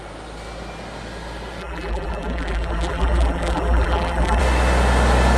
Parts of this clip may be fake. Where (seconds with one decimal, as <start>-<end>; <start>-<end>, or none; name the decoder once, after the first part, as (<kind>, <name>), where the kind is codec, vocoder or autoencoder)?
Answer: 1.6-4.4 (vocoder, BigVGAN v2)